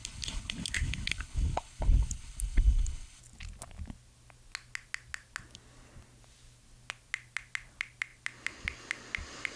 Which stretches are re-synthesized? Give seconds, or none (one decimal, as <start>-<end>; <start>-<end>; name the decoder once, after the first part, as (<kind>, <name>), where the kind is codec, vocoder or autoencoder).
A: 0.0-3.2 (codec, HILCodec)